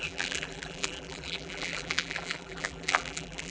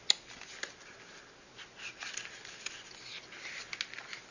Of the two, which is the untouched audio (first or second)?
second